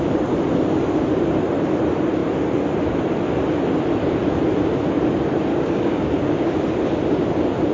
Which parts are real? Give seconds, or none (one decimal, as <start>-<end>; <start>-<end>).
0.0-5.5; 6.4-7.7